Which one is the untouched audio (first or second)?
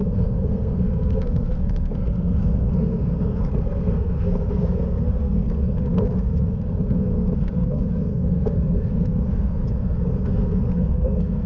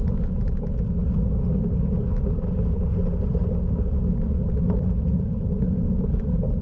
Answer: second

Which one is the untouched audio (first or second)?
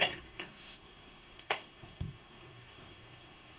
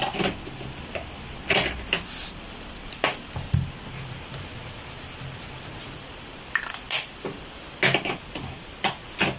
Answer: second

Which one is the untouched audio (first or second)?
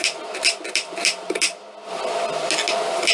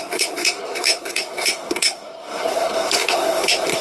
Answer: first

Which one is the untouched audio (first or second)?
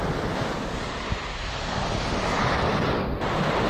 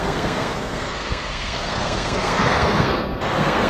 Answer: first